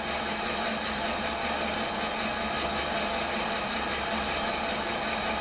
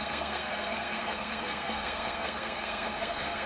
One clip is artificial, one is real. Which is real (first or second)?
first